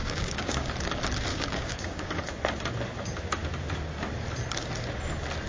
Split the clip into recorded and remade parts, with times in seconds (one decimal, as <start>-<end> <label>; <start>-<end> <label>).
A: 0.0-0.7 remade; 0.7-1.3 recorded; 1.3-2.2 remade; 2.2-5.5 recorded